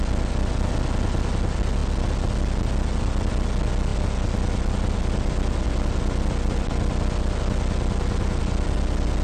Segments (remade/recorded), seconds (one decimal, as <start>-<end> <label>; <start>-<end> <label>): 0.0-9.2 recorded